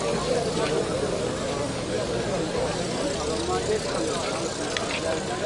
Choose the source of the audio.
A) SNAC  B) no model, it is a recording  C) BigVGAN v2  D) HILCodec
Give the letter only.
B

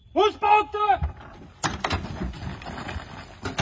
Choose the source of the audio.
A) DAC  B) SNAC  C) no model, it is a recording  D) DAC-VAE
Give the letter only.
C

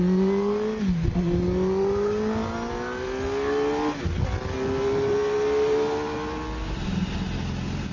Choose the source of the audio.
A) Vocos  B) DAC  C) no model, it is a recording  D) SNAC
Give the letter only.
C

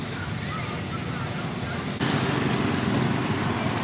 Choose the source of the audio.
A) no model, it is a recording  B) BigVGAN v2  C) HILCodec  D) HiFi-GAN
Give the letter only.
A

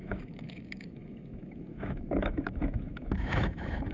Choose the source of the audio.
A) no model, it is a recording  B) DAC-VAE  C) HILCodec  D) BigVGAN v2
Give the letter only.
B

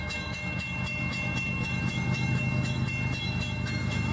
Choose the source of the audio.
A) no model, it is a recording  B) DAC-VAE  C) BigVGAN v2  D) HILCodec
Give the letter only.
B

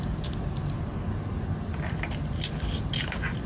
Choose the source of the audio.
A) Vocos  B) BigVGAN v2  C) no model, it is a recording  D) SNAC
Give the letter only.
C